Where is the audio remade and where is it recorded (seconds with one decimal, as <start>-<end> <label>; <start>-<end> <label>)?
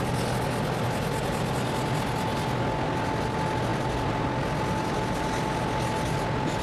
0.0-6.6 recorded